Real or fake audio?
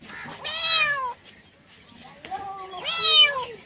real